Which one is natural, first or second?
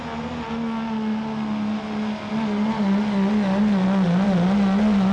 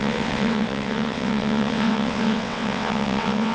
first